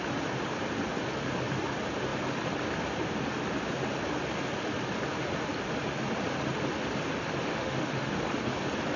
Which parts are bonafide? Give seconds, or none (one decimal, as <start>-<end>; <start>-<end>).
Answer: 0.0-7.5; 8.1-9.0

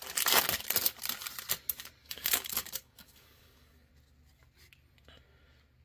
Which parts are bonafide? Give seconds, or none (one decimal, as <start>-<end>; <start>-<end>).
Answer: 0.0-2.0; 3.9-5.8

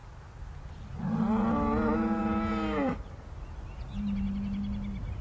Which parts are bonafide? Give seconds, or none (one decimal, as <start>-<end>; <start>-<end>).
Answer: 0.0-5.2

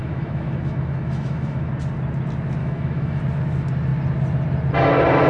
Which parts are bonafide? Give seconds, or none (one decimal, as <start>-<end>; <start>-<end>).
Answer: 1.7-2.6; 3.2-5.3

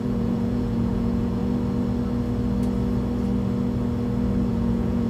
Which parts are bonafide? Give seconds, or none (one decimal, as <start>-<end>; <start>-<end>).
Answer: 1.4-4.5

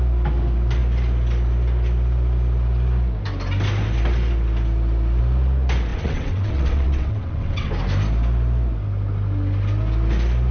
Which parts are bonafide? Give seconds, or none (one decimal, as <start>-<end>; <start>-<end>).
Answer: 0.0-5.9; 7.7-10.5

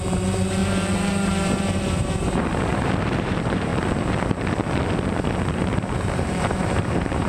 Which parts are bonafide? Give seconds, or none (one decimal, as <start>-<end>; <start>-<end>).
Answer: 3.7-5.5

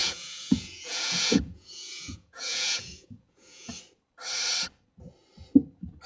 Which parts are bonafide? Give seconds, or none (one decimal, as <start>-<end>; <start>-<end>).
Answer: 3.7-6.1